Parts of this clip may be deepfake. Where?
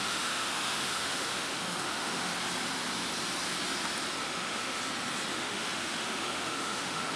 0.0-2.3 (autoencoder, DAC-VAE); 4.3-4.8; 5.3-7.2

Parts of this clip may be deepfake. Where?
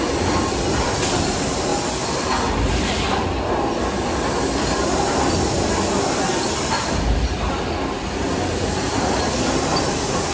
none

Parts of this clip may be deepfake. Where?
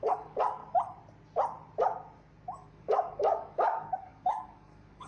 0.0-0.6 (codec, DAC); 2.7-5.1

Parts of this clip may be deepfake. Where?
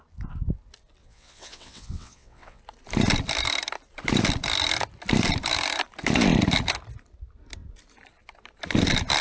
1.0-2.6 (vocoder, WaveNeXt)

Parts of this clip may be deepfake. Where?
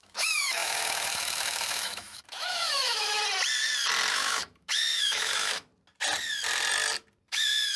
0.0-3.2 (autoencoder, DAC-VAE); 4.1-5.7; 7.3-7.8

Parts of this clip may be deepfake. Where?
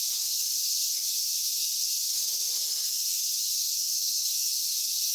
0.0-5.1 (autoencoder, DAC-VAE)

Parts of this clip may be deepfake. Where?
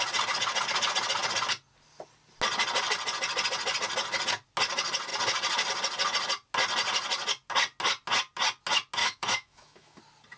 9.0-10.0 (autoencoder, DAC-VAE)